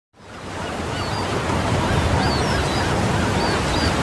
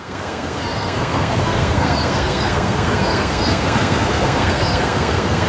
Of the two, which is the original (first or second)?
first